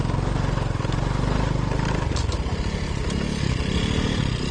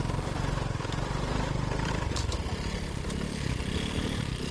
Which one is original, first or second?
first